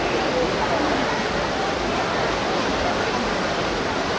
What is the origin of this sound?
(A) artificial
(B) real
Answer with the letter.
B